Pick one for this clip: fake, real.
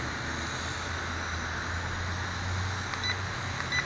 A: real